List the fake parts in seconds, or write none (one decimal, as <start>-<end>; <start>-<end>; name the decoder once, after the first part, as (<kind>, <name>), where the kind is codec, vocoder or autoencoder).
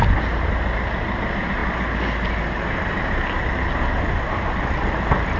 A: none